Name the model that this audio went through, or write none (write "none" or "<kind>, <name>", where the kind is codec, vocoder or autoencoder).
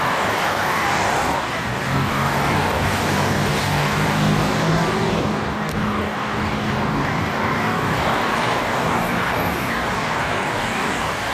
codec, DAC